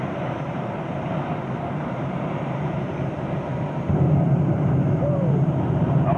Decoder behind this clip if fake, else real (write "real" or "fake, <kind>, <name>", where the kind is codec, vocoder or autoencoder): fake, vocoder, BigVGAN v2